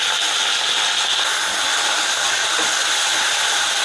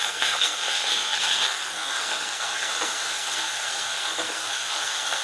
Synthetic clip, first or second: second